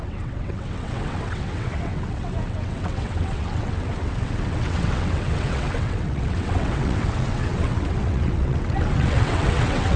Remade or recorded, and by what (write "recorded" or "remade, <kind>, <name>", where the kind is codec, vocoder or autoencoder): remade, vocoder, WaveNeXt